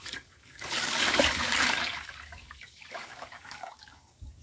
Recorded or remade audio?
remade